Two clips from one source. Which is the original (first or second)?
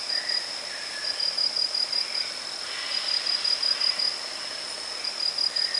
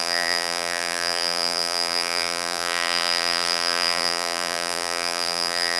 first